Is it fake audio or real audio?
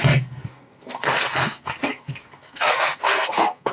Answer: fake